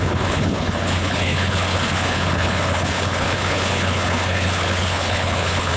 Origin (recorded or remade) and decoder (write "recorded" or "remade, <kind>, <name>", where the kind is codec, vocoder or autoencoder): remade, codec, HILCodec